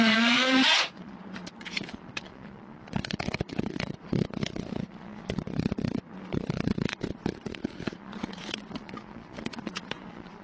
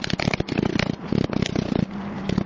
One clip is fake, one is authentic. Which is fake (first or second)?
first